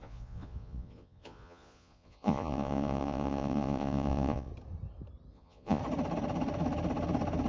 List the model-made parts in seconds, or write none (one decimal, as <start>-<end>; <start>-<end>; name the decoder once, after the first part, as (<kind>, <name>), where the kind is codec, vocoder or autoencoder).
0.0-4.5 (vocoder, Vocos); 5.3-5.8